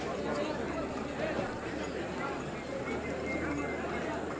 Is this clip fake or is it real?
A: real